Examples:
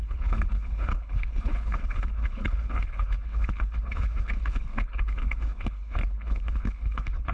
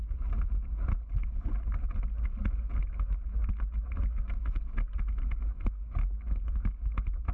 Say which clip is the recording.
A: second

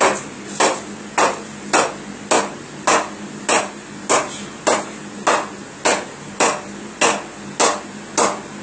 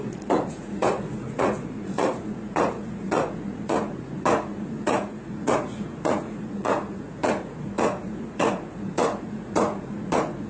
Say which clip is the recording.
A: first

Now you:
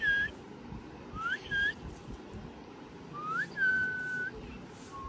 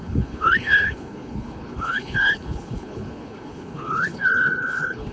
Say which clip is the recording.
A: first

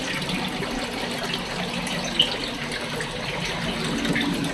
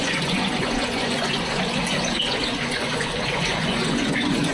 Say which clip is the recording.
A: first